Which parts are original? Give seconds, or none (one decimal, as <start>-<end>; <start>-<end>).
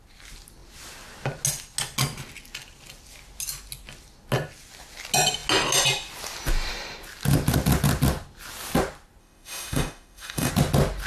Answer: 0.0-9.2; 10.5-11.1